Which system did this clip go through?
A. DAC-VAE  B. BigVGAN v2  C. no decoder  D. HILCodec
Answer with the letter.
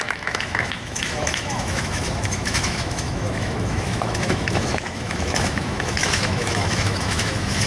A